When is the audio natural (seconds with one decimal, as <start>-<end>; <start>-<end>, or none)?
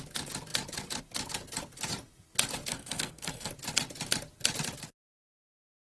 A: 0.0-2.7; 3.5-5.9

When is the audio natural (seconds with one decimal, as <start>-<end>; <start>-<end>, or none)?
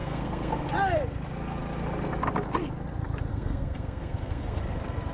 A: 0.7-3.3; 4.6-5.1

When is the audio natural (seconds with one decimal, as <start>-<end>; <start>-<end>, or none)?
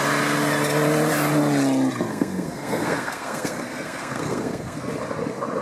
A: 0.0-2.1; 4.9-5.6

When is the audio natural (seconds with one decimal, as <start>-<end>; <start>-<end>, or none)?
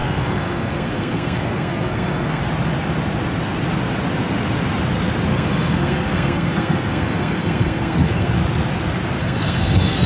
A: 2.4-5.3; 8.3-9.2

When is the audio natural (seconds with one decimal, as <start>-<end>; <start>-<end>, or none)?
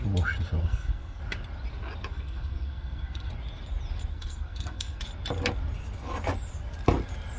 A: 0.0-0.6; 1.2-2.1; 3.3-4.1; 5.0-7.4